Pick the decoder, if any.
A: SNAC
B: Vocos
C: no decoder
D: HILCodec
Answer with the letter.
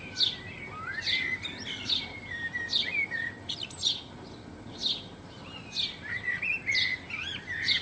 C